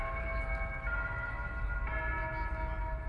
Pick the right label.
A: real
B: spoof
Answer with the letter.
A